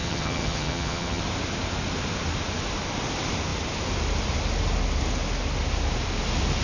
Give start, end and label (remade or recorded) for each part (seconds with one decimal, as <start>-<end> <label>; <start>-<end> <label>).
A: 0.0-1.2 remade; 1.2-6.6 recorded